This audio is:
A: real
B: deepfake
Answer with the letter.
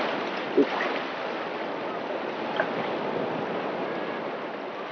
A